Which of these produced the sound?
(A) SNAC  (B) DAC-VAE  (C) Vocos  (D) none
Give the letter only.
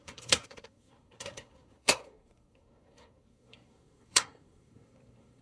A